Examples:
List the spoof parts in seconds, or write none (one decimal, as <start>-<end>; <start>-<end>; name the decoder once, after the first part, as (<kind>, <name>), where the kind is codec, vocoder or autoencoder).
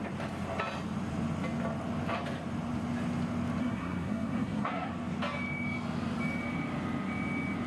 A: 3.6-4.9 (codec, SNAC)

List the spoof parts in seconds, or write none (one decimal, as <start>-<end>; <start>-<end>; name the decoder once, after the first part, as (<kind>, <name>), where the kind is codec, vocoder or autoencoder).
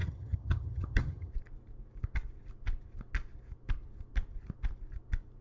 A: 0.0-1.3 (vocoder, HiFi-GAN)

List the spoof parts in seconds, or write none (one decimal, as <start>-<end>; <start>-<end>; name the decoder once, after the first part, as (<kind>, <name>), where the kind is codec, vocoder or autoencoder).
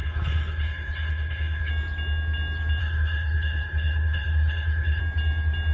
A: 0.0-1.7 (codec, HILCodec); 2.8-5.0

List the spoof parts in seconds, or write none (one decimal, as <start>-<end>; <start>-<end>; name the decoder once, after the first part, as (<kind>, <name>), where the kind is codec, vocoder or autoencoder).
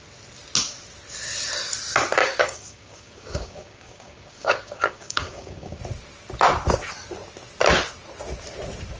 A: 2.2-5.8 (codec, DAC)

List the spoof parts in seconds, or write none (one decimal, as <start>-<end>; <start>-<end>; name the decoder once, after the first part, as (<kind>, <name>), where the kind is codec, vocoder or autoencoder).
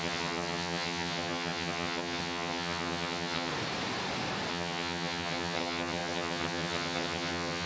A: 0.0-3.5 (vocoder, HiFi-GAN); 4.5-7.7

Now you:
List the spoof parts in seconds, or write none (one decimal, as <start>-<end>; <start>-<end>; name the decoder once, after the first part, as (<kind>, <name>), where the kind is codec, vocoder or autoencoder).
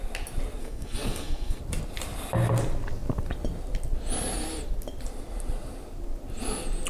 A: 0.6-1.6 (codec, SNAC)